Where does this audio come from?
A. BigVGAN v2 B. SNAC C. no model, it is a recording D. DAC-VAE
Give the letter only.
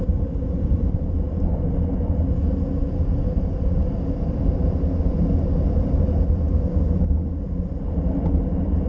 C